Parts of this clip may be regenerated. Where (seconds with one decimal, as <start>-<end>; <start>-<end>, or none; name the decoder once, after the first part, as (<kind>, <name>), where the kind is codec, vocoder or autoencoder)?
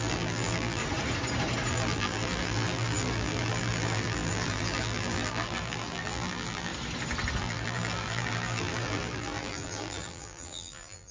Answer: 0.0-0.8 (vocoder, BigVGAN v2); 1.7-6.7; 7.4-11.1